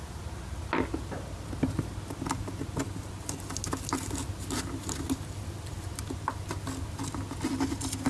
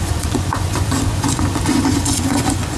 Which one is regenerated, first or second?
second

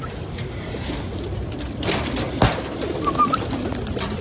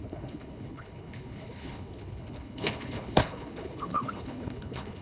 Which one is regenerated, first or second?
second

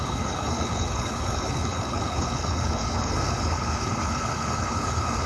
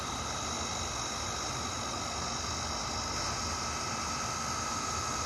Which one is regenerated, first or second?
first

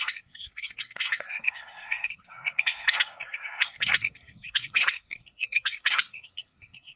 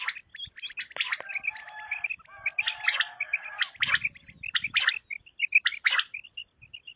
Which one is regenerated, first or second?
first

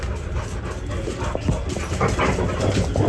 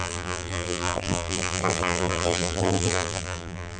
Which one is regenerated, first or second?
second